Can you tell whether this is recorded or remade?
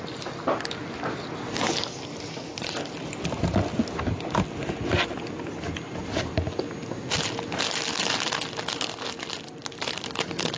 recorded